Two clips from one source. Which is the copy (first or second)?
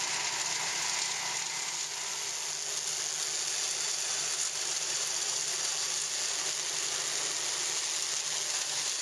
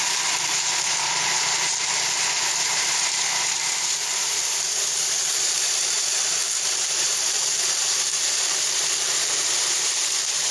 second